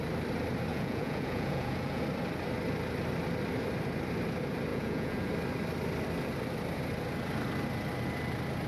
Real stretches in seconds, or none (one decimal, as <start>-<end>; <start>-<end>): 0.0-0.7; 2.0-4.7; 5.3-8.7